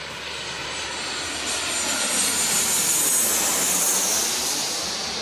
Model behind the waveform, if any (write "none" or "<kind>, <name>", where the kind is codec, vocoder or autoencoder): none